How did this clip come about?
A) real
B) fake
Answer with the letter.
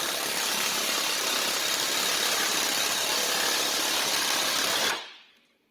A